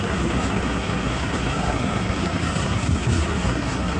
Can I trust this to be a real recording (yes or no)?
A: no